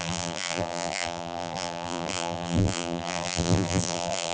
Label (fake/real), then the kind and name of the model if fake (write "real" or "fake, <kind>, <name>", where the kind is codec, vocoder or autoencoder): fake, vocoder, BigVGAN v2